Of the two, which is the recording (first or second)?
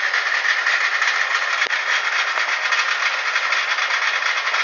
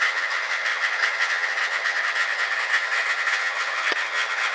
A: first